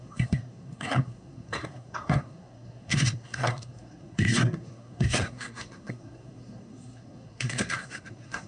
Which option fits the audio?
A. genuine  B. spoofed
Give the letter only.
B